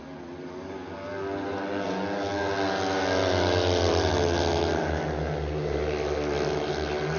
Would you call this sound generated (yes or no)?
no